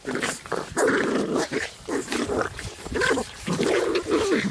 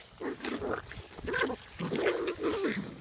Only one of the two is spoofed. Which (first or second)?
first